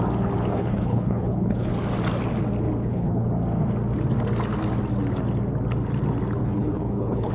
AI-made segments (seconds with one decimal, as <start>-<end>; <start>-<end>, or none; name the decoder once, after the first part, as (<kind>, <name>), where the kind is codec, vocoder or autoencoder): 0.5-1.7 (codec, HILCodec); 2.8-3.3; 6.4-7.3